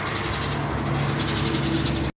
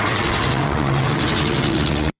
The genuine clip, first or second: first